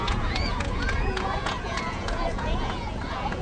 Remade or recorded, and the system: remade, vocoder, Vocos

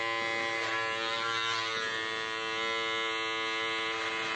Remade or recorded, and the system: recorded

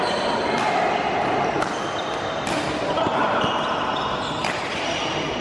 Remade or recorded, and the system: recorded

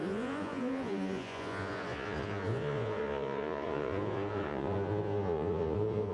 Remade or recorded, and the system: remade, vocoder, Vocos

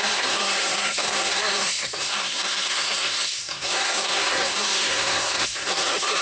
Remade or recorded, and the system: remade, codec, SNAC